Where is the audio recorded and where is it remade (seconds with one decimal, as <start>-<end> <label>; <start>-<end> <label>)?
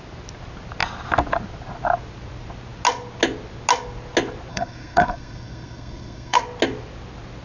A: 0.0-4.5 recorded; 4.5-6.4 remade; 6.4-7.4 recorded